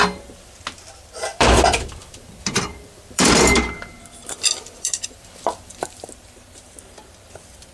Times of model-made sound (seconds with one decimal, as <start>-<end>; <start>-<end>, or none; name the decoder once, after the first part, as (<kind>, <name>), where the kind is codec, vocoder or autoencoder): 1.3-5.9 (vocoder, BigVGAN v2)